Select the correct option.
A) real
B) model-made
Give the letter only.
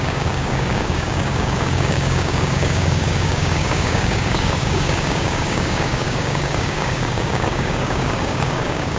B